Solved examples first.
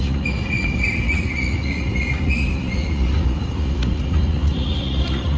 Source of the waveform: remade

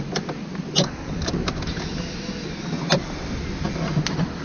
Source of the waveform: recorded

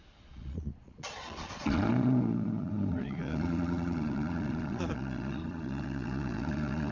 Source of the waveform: remade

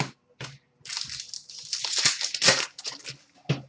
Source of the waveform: recorded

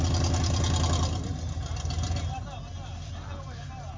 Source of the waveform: recorded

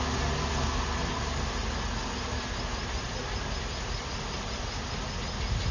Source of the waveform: recorded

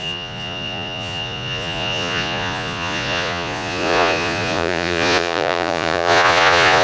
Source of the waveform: remade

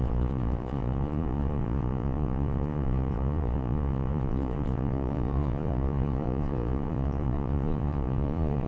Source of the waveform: remade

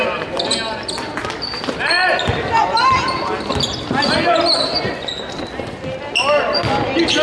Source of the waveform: recorded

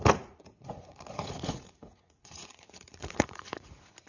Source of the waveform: remade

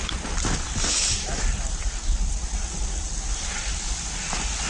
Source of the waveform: recorded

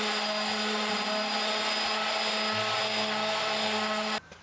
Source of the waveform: recorded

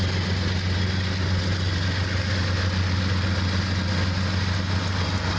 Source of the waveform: recorded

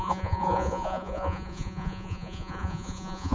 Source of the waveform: remade